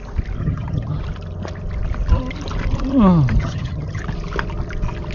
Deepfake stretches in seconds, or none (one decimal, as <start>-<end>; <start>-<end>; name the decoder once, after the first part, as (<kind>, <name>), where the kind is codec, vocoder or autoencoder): 0.4-1.0 (vocoder, HiFi-GAN); 3.4-4.0